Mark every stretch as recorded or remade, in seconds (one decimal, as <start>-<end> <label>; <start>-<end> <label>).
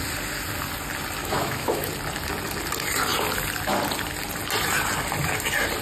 0.0-1.2 recorded; 1.2-1.9 remade; 1.9-5.8 recorded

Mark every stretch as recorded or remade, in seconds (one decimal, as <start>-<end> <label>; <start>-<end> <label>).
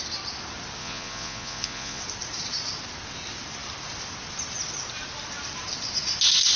0.0-0.8 recorded; 0.8-2.0 remade; 2.0-6.6 recorded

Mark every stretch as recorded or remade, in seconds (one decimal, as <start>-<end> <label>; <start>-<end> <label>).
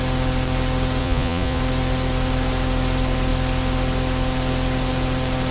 0.0-1.0 recorded; 1.0-1.6 remade; 1.6-5.5 recorded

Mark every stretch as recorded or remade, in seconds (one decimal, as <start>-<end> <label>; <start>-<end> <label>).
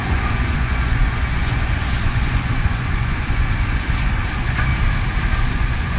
0.0-4.7 remade; 4.7-5.4 recorded; 5.4-6.0 remade